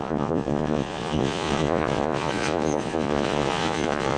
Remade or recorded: remade